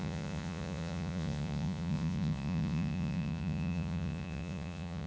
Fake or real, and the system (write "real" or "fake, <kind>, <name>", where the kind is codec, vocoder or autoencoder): fake, vocoder, Vocos